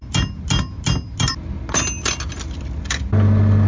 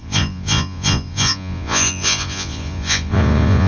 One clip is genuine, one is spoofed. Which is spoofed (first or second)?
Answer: second